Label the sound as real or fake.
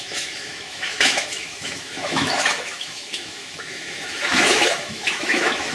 fake